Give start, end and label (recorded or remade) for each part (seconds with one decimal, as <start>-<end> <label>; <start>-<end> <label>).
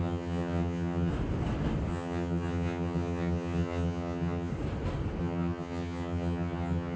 0.0-1.1 remade; 1.1-1.9 recorded; 1.9-4.5 remade; 4.5-5.2 recorded; 5.2-7.0 remade